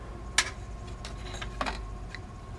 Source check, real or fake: real